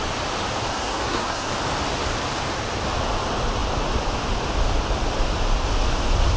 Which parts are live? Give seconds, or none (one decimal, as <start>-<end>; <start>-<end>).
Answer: 0.0-0.7; 1.5-6.4